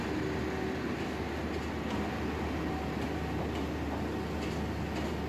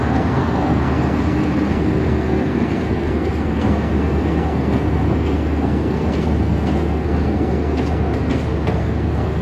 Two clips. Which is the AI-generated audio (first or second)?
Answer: second